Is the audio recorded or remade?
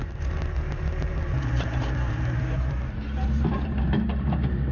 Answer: remade